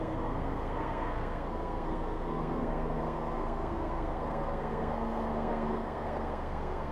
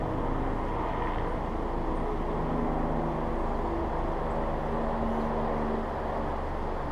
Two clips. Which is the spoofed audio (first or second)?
first